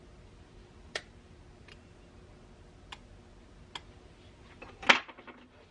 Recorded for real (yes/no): yes